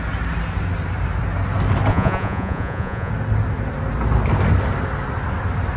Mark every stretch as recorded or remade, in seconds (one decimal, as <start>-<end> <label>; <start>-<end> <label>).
0.0-1.9 recorded; 1.9-3.1 remade; 3.1-5.8 recorded

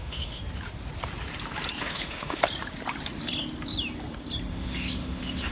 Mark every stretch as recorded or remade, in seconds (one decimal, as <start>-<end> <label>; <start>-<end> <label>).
0.0-0.4 remade; 0.4-1.8 recorded; 1.8-2.4 remade; 2.4-4.5 recorded; 4.5-5.5 remade